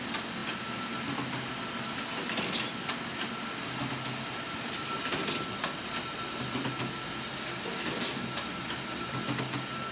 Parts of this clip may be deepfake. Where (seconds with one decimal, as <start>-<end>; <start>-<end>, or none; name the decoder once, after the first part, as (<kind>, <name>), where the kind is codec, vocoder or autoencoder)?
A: none